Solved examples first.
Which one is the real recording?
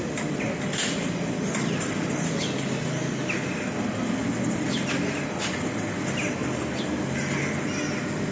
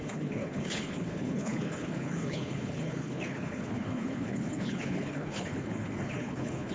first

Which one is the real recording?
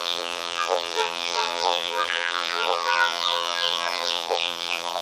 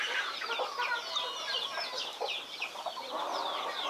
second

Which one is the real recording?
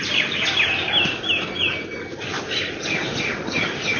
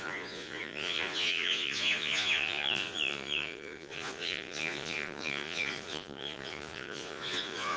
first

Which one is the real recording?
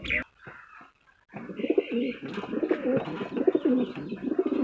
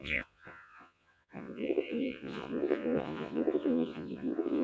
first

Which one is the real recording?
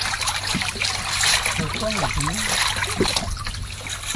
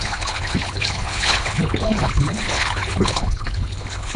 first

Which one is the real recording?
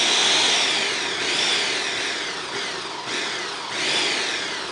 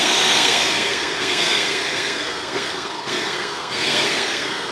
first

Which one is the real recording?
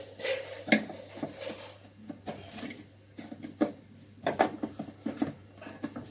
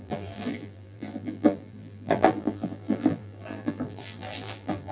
first